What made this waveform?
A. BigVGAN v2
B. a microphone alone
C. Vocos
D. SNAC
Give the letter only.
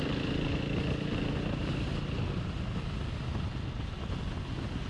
B